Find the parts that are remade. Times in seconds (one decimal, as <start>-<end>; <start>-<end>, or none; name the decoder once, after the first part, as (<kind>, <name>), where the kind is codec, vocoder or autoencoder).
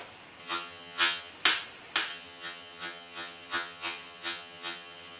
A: 0.4-1.3 (vocoder, HiFi-GAN); 2.1-5.2